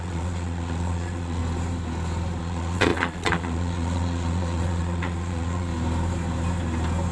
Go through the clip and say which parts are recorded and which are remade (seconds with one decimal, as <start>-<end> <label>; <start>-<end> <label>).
0.0-1.4 remade; 1.4-2.4 recorded; 2.4-5.7 remade; 5.7-7.1 recorded